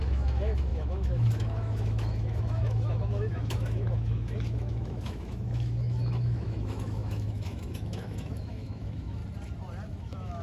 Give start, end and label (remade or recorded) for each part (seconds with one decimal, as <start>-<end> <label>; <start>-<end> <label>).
0.0-9.2 remade; 9.2-9.9 recorded; 9.9-10.4 remade